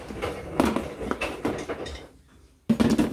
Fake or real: real